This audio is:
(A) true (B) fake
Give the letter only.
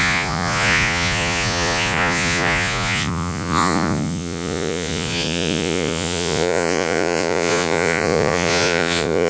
B